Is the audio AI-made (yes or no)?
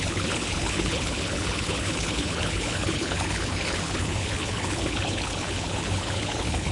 yes